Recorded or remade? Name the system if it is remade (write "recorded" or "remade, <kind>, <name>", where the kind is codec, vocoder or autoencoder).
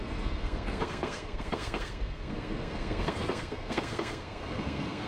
remade, codec, SNAC